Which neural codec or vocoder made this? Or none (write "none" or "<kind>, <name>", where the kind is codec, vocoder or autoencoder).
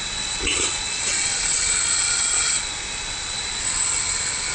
vocoder, Vocos